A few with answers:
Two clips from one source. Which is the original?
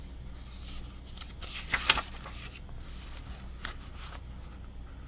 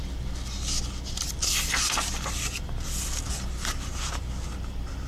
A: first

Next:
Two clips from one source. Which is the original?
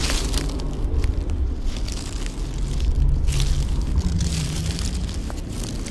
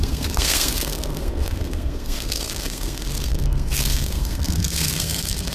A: first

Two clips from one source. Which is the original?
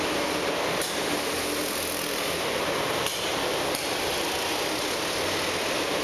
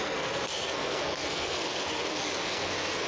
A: first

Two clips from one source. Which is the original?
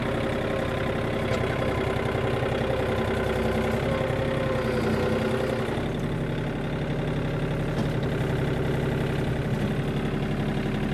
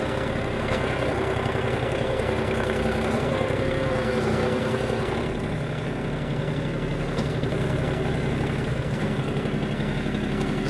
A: first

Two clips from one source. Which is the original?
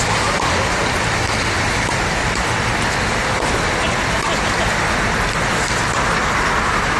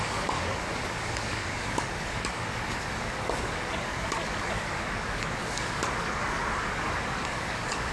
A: first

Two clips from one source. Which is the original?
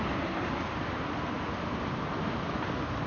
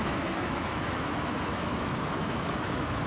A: first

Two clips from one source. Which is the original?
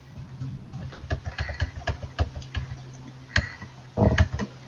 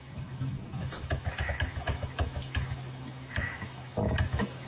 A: first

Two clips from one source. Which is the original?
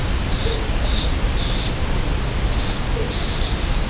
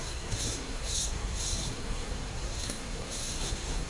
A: first